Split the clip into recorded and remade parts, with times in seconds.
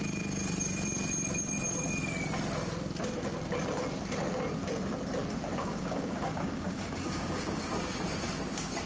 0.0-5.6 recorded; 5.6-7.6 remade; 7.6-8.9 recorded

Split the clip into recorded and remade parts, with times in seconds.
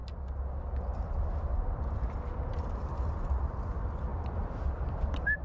0.0-2.4 recorded; 2.4-5.4 remade